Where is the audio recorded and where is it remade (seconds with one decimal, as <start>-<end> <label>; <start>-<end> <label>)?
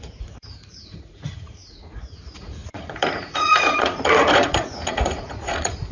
0.0-5.9 remade